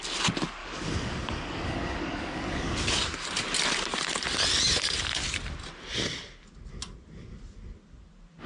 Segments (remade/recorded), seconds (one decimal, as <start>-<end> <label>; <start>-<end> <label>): 0.0-0.6 recorded; 0.6-3.0 remade; 3.0-8.5 recorded